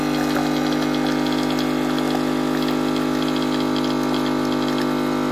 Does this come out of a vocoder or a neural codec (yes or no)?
no